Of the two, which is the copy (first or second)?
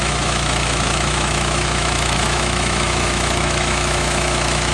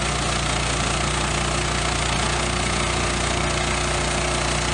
first